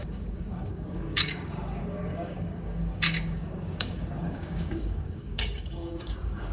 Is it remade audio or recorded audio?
remade